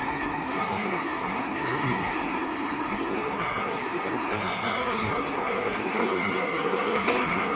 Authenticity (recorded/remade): remade